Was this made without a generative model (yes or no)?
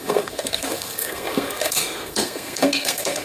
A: no